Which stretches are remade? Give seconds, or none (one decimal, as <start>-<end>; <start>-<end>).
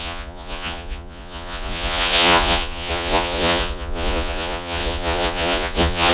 0.0-6.1